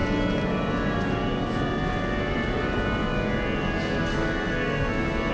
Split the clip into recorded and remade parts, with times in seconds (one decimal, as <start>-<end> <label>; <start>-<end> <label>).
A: 0.0-4.0 recorded; 4.0-5.3 remade